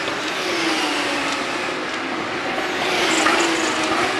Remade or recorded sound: recorded